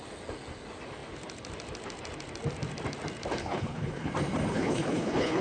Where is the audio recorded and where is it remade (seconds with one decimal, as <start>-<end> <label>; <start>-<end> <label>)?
0.0-3.4 recorded; 3.4-4.1 remade; 4.1-4.5 recorded; 4.5-5.4 remade